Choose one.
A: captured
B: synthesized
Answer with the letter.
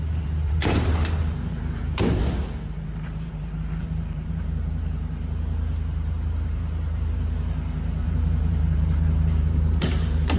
B